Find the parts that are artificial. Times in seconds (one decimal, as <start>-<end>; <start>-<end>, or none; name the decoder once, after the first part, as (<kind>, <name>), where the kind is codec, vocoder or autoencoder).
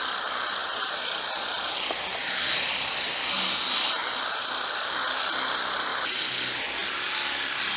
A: none